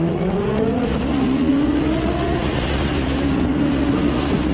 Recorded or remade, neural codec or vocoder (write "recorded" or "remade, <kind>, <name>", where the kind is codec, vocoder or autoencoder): remade, vocoder, Vocos